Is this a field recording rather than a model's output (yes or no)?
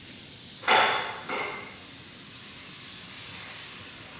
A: yes